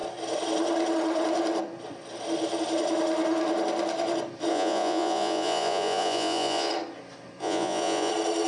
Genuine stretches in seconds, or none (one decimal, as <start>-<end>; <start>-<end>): 0.0-4.5; 6.7-7.4; 8.1-8.5